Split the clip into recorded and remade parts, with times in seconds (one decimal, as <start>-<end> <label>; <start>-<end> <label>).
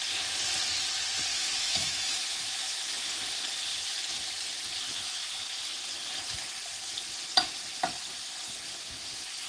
0.0-1.3 recorded; 1.3-3.2 remade; 3.2-4.9 recorded; 4.9-5.4 remade; 5.4-9.5 recorded